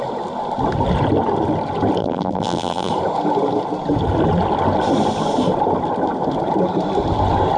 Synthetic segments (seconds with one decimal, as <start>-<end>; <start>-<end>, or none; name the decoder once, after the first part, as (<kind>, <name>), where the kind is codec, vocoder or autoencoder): 2.0-2.9 (vocoder, BigVGAN v2)